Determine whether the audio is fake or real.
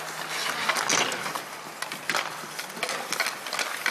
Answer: real